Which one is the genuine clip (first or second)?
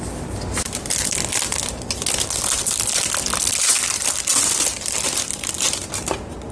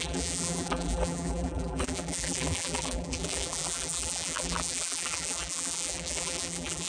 first